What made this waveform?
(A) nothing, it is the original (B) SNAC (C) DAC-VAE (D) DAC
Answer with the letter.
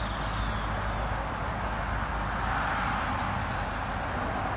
A